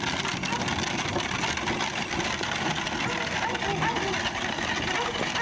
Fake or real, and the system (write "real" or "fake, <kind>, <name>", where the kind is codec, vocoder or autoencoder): real